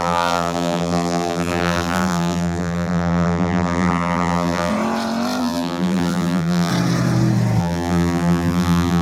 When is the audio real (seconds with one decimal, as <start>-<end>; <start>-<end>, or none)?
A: 4.7-5.4; 6.7-7.6